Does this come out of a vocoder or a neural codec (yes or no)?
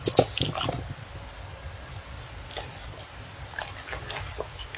no